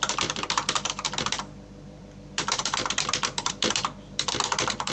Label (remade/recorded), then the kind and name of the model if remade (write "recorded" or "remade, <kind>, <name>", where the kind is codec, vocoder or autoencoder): remade, vocoder, BigVGAN v2